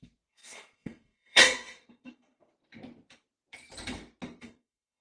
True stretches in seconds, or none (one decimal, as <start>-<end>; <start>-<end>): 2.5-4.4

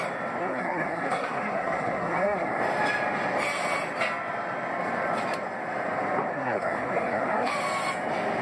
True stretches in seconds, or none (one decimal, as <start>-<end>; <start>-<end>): 0.0-0.4; 2.6-6.3; 7.5-8.4

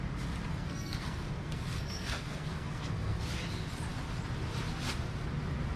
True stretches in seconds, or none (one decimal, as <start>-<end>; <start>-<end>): 0.0-0.5; 3.3-5.8

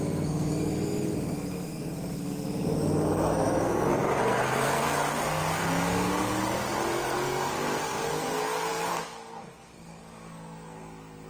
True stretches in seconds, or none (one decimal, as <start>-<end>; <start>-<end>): none